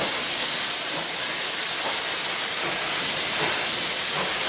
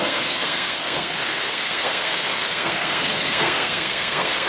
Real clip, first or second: first